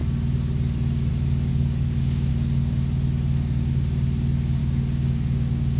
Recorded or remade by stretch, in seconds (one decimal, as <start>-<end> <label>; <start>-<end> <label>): 0.0-1.5 recorded; 1.5-2.3 remade; 2.3-4.6 recorded; 4.6-5.8 remade

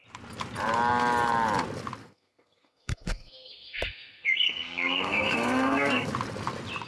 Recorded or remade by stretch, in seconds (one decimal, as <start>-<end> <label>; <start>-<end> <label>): 0.0-2.0 recorded; 2.0-6.1 remade; 6.1-6.9 recorded